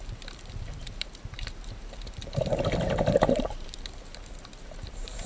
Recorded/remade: remade